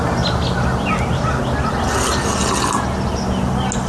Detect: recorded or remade recorded